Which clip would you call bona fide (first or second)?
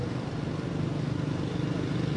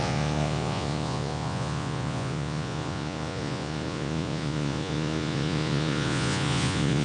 first